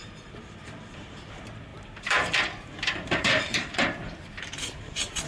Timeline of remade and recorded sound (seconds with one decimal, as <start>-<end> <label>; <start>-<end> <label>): 0.0-5.3 remade